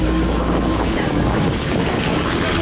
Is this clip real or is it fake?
fake